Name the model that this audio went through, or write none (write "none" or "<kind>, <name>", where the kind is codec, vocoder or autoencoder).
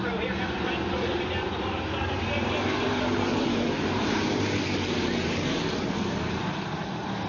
vocoder, BigVGAN v2